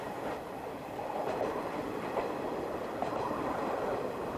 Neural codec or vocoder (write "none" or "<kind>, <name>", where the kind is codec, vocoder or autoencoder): none